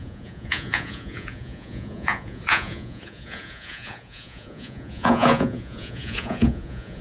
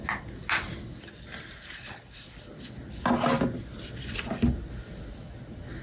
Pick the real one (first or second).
second